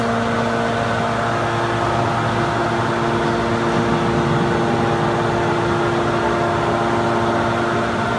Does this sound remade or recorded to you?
recorded